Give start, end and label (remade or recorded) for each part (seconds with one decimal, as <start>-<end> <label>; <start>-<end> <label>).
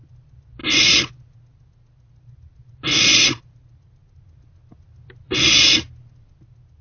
0.0-6.8 recorded